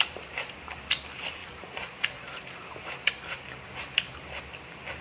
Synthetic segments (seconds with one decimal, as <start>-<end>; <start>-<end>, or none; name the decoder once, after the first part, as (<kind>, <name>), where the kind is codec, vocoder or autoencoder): 0.0-5.0 (vocoder, BigVGAN v2)